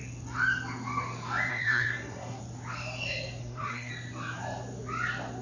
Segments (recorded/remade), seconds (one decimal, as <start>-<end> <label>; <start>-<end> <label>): 0.0-1.5 recorded; 1.5-2.4 remade; 2.4-3.4 recorded; 3.4-3.9 remade; 3.9-5.4 recorded